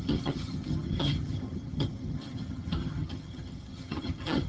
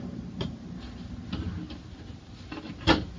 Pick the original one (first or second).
second